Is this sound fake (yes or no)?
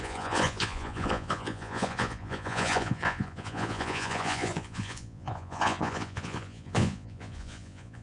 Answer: yes